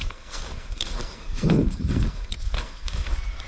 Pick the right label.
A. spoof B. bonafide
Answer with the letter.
A